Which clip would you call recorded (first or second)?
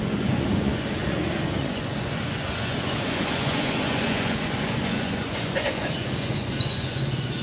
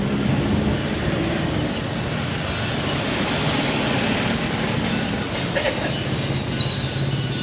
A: second